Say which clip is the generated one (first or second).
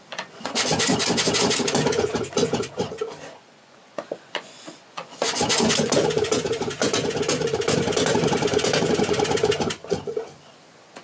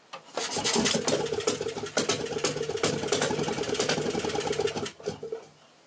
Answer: first